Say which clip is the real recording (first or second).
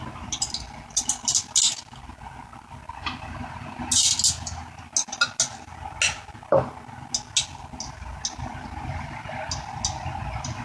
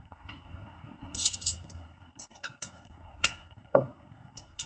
first